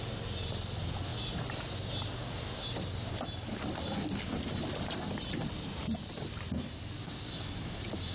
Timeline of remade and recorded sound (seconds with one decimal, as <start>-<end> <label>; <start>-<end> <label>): 0.0-8.1 recorded